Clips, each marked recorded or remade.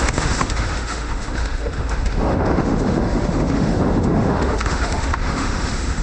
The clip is remade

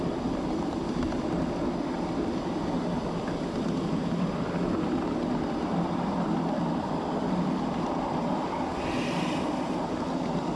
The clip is recorded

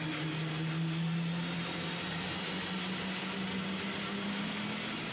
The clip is recorded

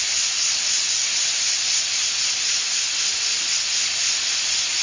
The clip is recorded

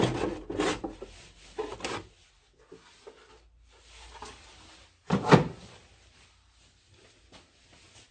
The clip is recorded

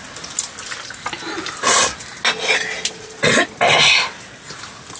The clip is recorded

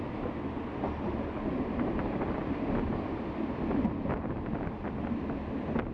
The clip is recorded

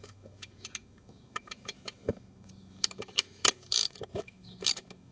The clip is remade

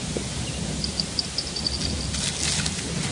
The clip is recorded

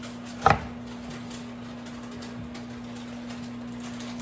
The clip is recorded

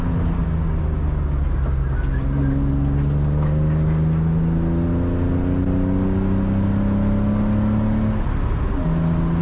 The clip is recorded